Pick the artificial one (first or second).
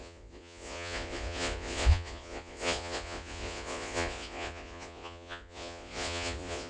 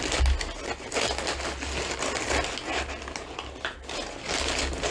first